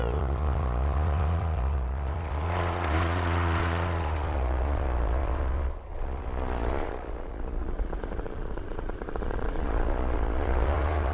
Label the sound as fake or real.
fake